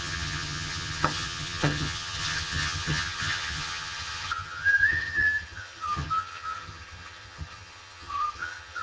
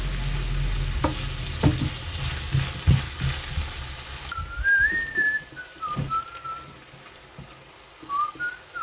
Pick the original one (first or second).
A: second